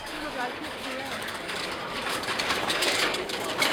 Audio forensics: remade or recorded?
remade